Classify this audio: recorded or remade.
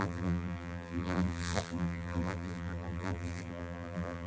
remade